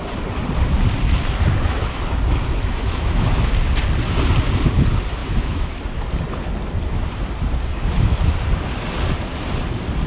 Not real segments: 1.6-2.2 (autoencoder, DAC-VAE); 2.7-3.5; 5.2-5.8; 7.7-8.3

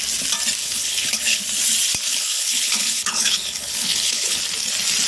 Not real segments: 0.6-1.4 (codec, HILCodec); 2.1-4.4

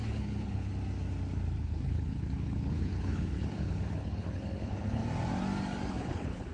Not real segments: 0.0-0.7 (codec, HILCodec); 1.6-5.0; 5.9-6.5

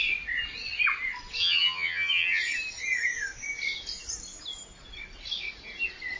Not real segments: 1.4-2.4 (vocoder, HiFi-GAN)

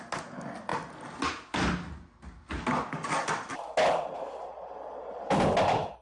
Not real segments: none